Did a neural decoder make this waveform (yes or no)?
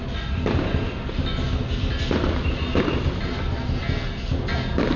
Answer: no